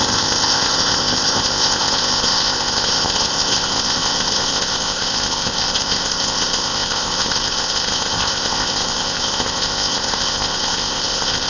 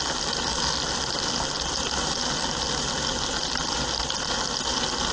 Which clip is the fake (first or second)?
first